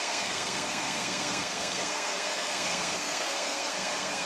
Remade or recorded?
remade